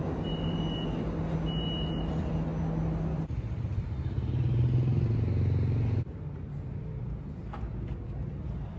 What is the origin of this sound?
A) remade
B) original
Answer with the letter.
B